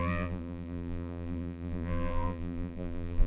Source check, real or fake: fake